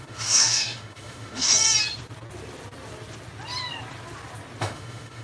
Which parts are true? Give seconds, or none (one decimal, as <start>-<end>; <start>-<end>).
1.5-4.6